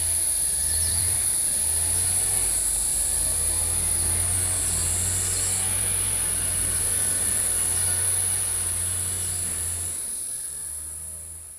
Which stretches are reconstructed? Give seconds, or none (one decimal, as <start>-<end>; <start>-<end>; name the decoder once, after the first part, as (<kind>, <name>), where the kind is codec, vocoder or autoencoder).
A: 0.6-1.2 (vocoder, BigVGAN v2)